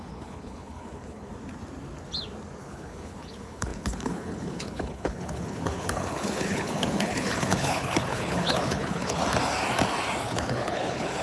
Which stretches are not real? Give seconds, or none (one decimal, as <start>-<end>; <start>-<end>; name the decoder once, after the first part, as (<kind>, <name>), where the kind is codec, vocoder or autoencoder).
0.0-1.3 (codec, HILCodec); 2.6-9.2; 10.2-11.2